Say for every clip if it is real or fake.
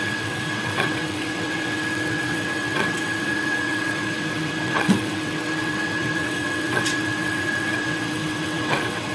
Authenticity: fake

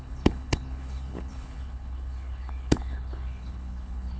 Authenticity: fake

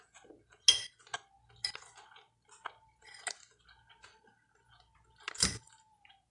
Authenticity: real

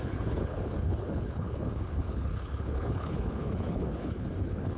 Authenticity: fake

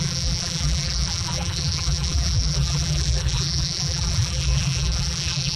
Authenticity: fake